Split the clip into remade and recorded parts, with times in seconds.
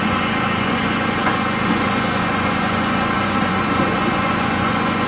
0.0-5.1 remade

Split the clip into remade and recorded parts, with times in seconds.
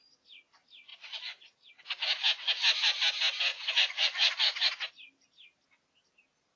0.0-0.9 recorded; 0.9-1.7 remade; 1.7-3.5 recorded; 3.5-4.7 remade; 4.7-6.6 recorded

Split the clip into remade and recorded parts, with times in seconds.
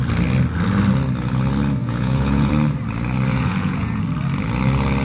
0.0-1.8 recorded; 1.8-2.5 remade; 2.5-3.3 recorded; 3.3-4.0 remade; 4.0-5.0 recorded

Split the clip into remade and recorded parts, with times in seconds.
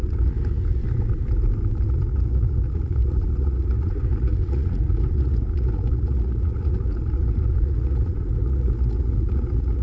0.0-0.8 remade; 0.8-1.9 recorded; 1.9-9.8 remade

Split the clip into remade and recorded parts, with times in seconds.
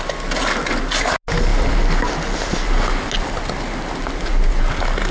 0.0-5.1 recorded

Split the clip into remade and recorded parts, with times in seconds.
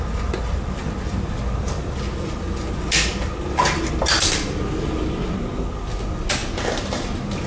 0.0-7.5 recorded